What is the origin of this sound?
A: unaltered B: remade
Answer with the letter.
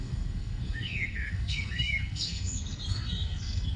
B